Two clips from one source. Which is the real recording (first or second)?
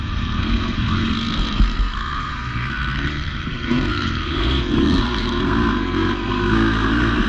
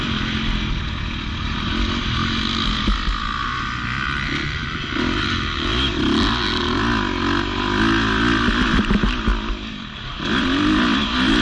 second